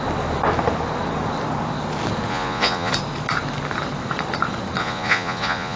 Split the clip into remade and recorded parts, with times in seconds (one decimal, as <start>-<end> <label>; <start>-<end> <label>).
0.0-2.3 recorded; 2.3-2.9 remade; 2.9-4.8 recorded; 4.8-5.8 remade